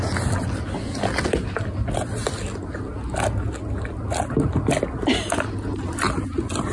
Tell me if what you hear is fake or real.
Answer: real